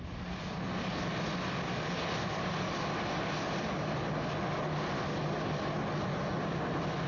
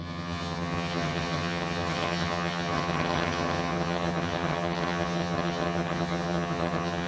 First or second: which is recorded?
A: first